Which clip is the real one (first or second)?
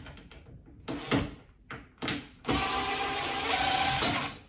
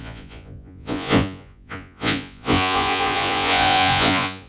first